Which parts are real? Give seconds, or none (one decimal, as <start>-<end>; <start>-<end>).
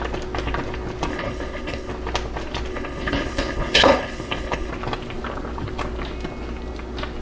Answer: 0.0-1.1; 1.9-2.7; 4.7-7.2